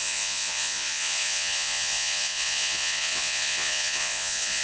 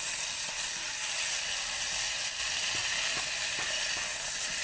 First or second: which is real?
second